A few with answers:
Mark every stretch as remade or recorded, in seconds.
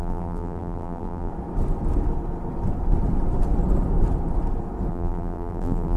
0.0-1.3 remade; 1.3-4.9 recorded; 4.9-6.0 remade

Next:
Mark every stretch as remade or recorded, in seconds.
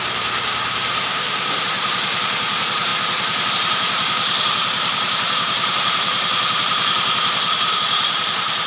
0.0-2.9 remade; 2.9-3.5 recorded; 3.5-8.7 remade